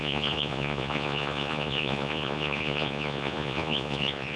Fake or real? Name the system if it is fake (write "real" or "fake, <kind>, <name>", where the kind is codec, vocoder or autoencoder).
fake, vocoder, Vocos